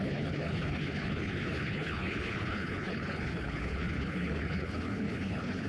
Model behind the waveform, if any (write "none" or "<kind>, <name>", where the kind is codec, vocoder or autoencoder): codec, HILCodec